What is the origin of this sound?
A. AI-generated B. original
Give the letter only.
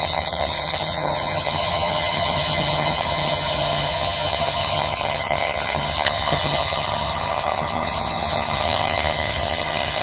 A